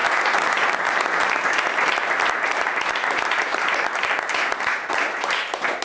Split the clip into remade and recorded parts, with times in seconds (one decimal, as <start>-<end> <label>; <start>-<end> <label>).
0.0-2.8 recorded; 2.8-5.8 remade